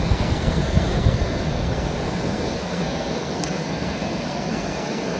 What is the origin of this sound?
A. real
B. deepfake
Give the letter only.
B